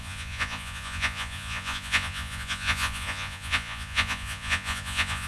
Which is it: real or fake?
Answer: fake